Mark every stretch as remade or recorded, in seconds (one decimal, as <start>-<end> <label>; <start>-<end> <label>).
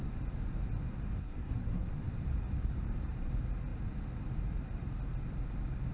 0.0-1.2 recorded; 1.2-1.9 remade; 1.9-5.9 recorded